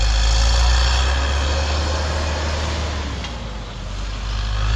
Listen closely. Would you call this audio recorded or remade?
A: recorded